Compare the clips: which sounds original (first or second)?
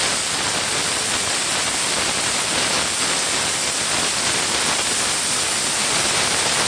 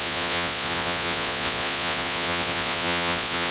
first